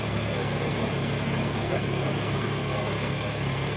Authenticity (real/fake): fake